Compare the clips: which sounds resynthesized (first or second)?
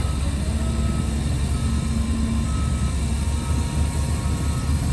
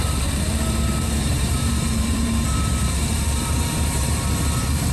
second